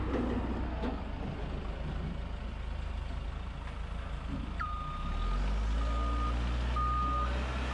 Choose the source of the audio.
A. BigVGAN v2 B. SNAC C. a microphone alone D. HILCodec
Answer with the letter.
C